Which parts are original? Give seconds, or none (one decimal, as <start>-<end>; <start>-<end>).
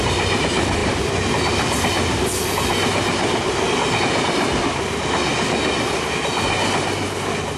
0.0-7.6